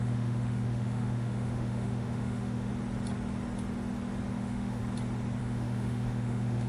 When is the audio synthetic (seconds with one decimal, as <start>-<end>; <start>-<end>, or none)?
0.0-2.7; 4.3-4.8; 5.4-6.7